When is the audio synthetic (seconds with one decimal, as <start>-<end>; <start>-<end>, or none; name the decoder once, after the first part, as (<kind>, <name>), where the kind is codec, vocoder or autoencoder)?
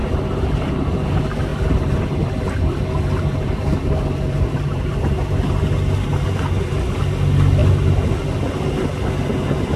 0.0-0.6 (vocoder, BigVGAN v2); 1.5-5.5